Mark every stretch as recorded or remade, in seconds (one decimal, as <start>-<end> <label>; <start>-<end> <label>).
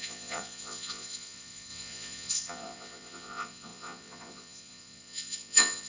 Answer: 0.0-5.9 remade